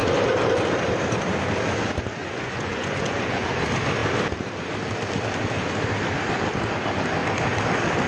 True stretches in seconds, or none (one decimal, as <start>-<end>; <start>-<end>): 0.0-2.2; 3.6-8.1